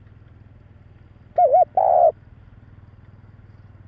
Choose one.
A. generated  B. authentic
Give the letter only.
B